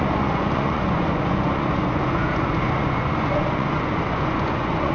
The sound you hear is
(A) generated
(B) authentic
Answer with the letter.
A